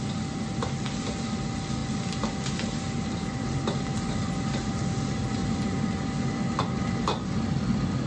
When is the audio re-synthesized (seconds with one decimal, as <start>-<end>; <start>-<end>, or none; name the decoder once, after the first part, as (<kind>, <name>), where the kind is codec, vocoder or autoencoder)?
none